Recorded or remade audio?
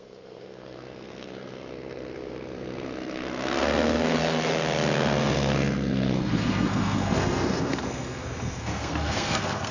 remade